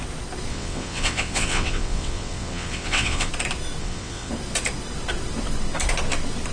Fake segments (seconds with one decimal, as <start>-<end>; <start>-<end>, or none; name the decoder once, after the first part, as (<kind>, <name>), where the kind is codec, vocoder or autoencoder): 0.5-3.3 (vocoder, WaveNeXt); 3.8-4.3